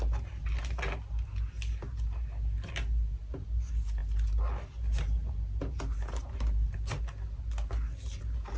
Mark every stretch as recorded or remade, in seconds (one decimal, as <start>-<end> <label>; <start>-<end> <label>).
0.0-8.6 recorded